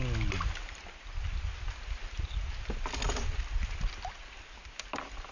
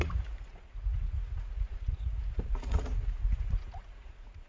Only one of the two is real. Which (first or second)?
first